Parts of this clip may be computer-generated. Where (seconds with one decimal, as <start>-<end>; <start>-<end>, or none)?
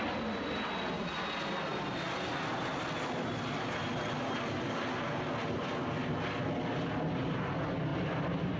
none